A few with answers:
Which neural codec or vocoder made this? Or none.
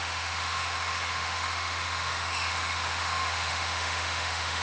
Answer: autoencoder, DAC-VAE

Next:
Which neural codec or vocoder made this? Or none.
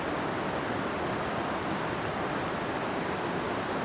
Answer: none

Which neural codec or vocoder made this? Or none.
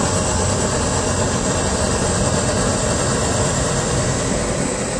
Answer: none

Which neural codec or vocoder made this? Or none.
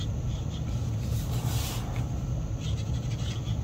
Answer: none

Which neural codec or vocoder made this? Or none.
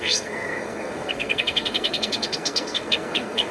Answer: codec, SNAC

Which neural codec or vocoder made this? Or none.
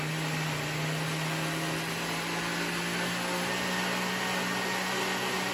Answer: none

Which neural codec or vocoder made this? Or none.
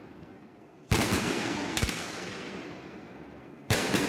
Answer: codec, SNAC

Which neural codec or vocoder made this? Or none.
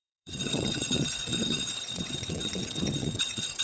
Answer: vocoder, WaveNeXt